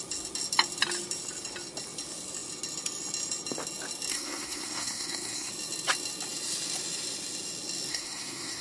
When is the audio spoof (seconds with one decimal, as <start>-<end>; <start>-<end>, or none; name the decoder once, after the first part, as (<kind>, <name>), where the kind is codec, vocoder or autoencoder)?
4.1-5.5 (codec, SNAC); 7.9-8.6